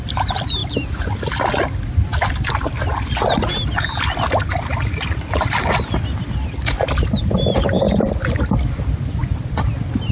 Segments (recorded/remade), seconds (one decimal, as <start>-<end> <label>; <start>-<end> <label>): 0.0-10.1 recorded